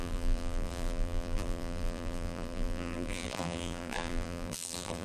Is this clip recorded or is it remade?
remade